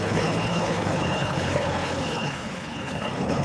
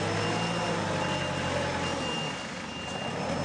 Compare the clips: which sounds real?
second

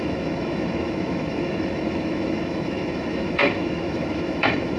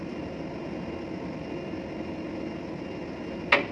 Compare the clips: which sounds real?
second